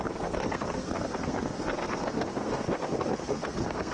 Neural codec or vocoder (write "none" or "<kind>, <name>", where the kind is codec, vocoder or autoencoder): codec, SNAC